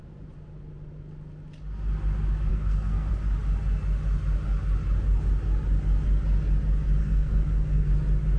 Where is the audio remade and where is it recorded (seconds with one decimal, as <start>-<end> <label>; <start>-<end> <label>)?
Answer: 0.0-2.5 recorded; 2.5-3.1 remade; 3.1-7.0 recorded; 7.0-7.9 remade; 7.9-8.4 recorded